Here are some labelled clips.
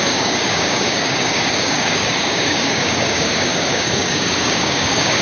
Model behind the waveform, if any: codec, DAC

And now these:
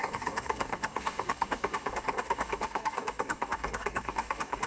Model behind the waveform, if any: codec, DAC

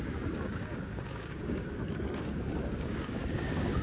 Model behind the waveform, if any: codec, DAC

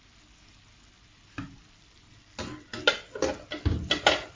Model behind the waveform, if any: none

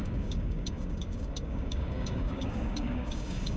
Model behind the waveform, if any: codec, DAC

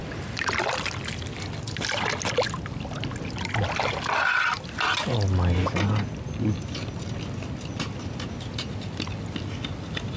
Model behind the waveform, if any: none